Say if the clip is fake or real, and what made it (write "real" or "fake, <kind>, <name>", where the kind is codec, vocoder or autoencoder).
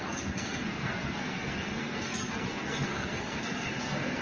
fake, codec, SNAC